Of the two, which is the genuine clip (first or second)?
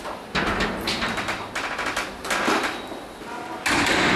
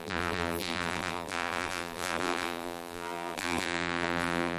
first